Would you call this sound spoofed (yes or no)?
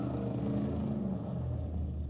no